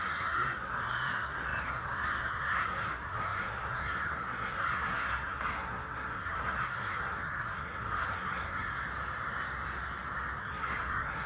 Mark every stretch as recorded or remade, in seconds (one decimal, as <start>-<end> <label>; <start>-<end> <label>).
0.0-8.7 remade; 8.7-10.4 recorded; 10.4-11.3 remade